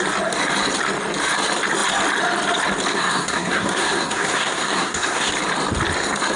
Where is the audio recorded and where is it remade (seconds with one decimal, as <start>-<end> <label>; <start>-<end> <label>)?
0.0-2.9 recorded; 2.9-5.3 remade; 5.3-6.4 recorded